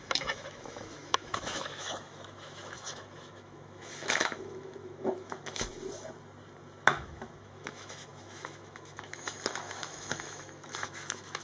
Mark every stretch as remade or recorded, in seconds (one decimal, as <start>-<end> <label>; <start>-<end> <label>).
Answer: 0.0-5.7 remade; 5.7-7.0 recorded; 7.0-11.4 remade